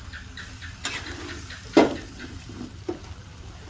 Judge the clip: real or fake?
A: fake